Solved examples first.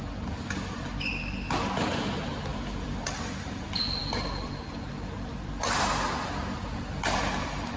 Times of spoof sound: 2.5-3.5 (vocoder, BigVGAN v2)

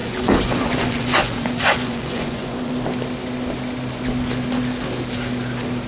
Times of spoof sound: 0.0-2.7 (vocoder, Vocos)

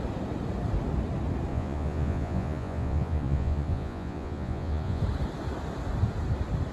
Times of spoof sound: 1.5-5.0 (vocoder, Vocos)

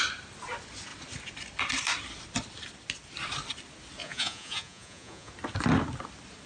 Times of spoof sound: 4.0-5.3 (vocoder, Vocos)

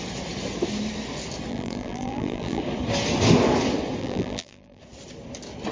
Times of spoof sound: 1.5-2.6 (vocoder, BigVGAN v2); 4.0-4.8

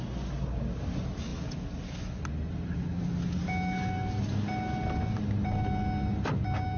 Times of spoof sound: none